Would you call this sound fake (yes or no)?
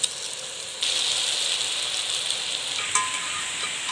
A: no